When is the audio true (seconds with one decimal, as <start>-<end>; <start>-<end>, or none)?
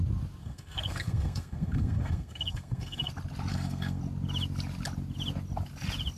0.0-0.4; 3.1-3.5; 4.0-6.2